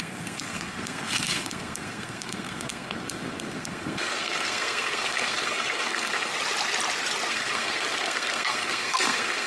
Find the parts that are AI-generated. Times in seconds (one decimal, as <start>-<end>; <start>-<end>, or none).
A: 0.0-6.3; 7.3-9.5